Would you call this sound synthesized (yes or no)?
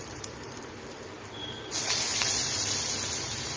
no